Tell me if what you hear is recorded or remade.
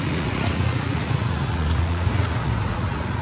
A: remade